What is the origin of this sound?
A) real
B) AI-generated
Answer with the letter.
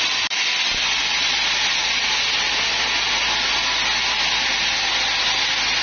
A